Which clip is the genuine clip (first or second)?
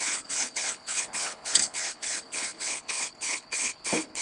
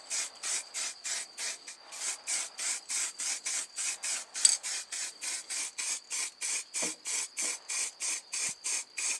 second